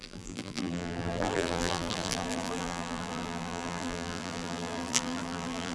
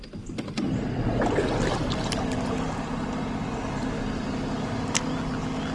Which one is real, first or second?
second